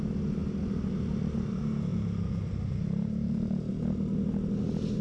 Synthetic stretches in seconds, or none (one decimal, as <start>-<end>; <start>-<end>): none